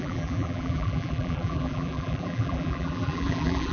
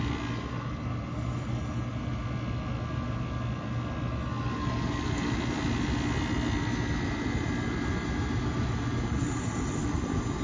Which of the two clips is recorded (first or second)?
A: second